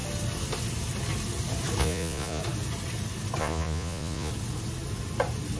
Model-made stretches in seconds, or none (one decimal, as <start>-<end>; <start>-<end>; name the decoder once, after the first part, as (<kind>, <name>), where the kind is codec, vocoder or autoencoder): 1.8-2.4 (vocoder, Vocos); 3.4-4.3